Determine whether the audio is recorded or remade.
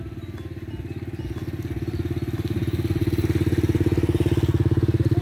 recorded